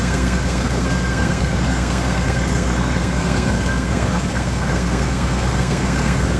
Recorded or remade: remade